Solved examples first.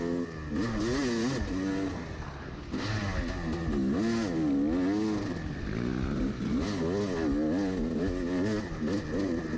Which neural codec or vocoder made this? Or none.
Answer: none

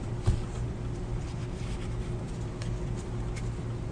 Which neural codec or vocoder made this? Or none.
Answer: vocoder, BigVGAN v2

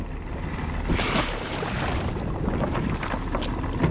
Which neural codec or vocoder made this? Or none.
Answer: none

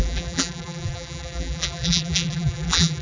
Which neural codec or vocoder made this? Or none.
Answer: vocoder, BigVGAN v2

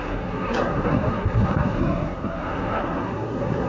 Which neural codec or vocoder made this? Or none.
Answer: codec, SNAC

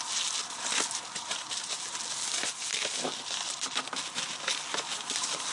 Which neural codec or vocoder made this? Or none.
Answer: none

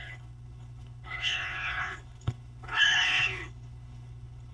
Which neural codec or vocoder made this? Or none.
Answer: codec, HILCodec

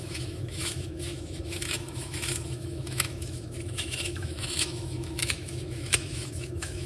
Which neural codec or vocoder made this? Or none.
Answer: autoencoder, DAC-VAE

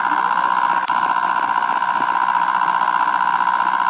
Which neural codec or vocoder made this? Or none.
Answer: none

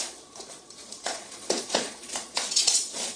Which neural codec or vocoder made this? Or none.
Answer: vocoder, Vocos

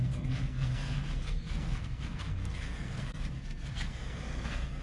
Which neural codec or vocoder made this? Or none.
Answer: codec, SNAC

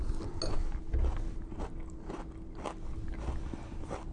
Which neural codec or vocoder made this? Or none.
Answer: none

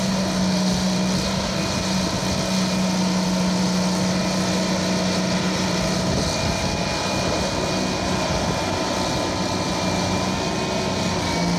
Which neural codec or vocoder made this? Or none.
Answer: none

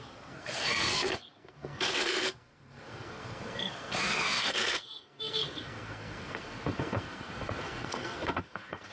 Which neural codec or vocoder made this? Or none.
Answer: codec, SNAC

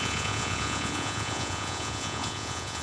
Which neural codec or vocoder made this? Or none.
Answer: vocoder, Vocos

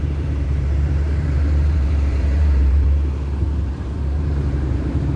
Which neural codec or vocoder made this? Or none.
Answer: vocoder, BigVGAN v2